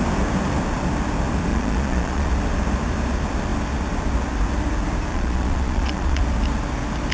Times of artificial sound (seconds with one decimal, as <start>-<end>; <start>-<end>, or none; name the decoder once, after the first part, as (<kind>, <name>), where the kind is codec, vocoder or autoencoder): 1.5-2.3 (vocoder, Vocos); 5.1-6.2